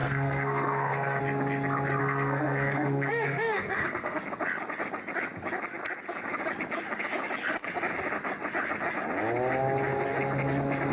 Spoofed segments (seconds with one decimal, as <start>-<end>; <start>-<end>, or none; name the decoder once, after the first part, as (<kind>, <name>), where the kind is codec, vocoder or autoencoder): 0.0-1.2 (codec, SNAC); 2.0-4.2